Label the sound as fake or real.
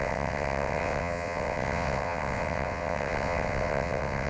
fake